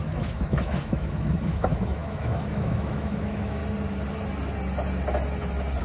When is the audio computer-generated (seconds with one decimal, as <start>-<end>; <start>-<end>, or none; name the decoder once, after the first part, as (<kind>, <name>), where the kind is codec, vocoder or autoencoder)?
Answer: 0.0-3.6 (autoencoder, DAC-VAE)